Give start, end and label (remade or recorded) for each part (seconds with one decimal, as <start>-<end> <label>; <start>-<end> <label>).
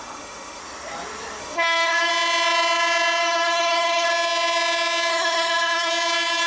0.0-0.6 remade; 0.6-1.4 recorded; 1.4-2.1 remade; 2.1-3.2 recorded; 3.2-4.1 remade; 4.1-5.1 recorded; 5.1-5.9 remade; 5.9-6.5 recorded